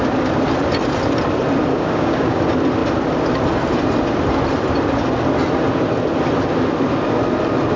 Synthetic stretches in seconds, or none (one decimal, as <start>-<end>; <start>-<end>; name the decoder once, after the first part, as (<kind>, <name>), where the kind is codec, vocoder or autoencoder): 1.7-2.4 (codec, DAC)